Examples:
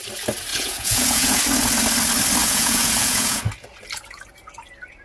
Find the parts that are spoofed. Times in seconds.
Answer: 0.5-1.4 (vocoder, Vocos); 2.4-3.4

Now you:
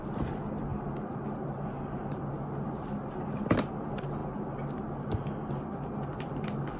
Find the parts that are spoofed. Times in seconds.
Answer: none